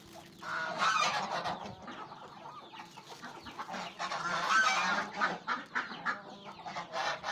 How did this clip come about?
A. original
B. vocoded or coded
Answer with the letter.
A